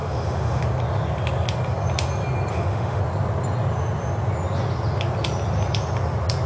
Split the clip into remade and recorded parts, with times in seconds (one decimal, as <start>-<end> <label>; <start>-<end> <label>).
0.0-0.6 remade; 0.6-2.5 recorded; 2.5-3.0 remade; 3.0-6.5 recorded